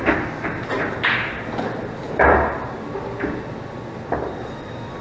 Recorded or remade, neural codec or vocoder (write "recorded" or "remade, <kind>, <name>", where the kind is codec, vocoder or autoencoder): recorded